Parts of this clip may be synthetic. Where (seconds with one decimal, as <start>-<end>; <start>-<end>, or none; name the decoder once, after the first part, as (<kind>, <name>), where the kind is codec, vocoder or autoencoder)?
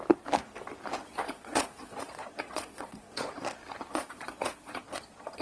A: 1.0-3.4 (vocoder, Vocos); 3.9-5.4